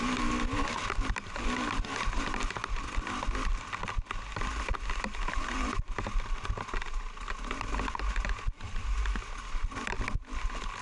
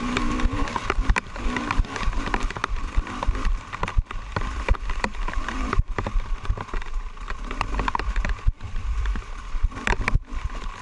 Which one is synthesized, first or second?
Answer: second